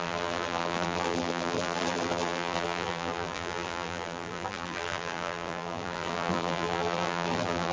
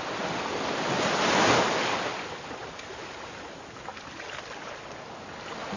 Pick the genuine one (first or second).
second